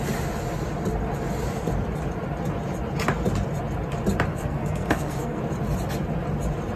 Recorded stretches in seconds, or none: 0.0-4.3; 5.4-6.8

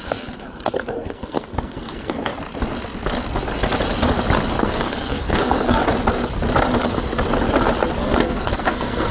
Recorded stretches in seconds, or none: 2.3-4.6; 5.8-8.0

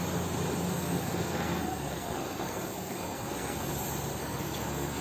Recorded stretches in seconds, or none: 0.0-0.7; 3.7-4.2